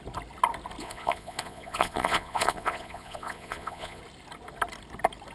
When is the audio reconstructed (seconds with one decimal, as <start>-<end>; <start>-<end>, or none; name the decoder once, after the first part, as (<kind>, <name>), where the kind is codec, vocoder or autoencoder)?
0.8-4.0 (vocoder, Vocos)